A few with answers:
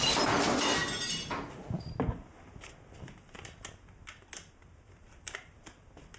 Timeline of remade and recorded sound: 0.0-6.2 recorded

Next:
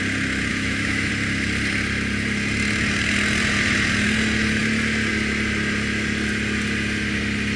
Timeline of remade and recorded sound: 0.0-0.5 recorded; 0.5-1.1 remade; 1.1-7.6 recorded

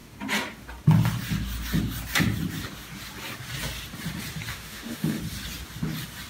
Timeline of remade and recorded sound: 0.0-4.5 recorded; 4.5-5.2 remade; 5.2-6.3 recorded